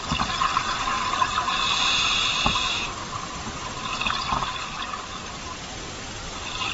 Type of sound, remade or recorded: remade